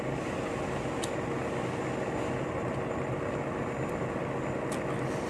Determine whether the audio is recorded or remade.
recorded